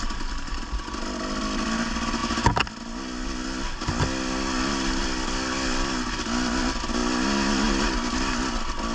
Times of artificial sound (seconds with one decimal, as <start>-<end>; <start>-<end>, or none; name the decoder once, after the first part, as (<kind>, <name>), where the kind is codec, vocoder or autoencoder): none